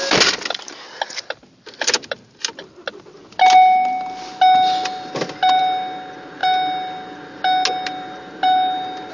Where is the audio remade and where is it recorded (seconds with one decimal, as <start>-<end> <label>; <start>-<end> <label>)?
0.0-9.1 recorded